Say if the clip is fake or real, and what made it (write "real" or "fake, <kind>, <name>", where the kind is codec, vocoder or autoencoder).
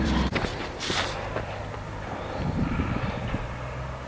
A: fake, vocoder, BigVGAN v2